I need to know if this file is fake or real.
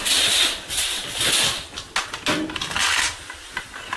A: real